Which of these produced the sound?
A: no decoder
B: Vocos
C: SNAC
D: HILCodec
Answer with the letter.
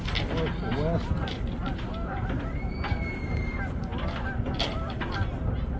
A